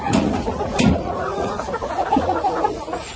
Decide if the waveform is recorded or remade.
remade